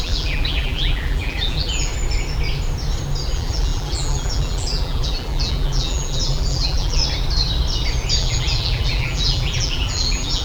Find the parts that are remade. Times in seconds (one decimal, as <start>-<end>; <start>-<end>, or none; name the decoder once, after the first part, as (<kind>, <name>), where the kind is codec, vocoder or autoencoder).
0.0-1.9 (vocoder, BigVGAN v2); 3.3-7.0; 8.2-10.4